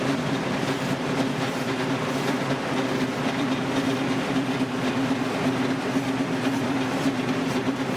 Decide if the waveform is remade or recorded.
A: remade